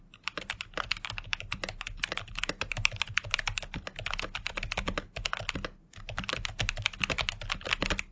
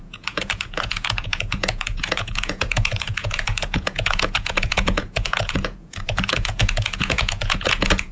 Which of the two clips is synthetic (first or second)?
second